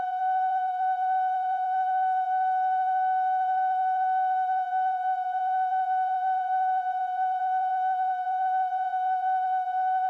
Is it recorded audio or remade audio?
remade